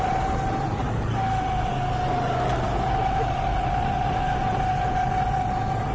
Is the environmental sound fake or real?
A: real